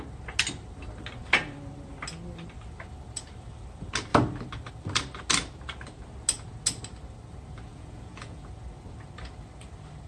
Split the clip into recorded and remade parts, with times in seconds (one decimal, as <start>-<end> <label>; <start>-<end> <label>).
0.0-7.7 recorded; 7.7-8.5 remade; 8.5-10.1 recorded